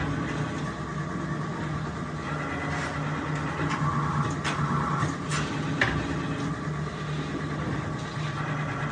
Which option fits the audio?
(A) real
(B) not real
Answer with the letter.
A